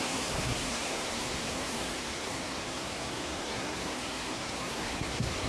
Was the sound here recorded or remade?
remade